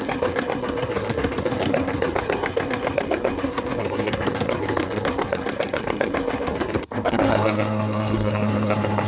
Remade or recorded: remade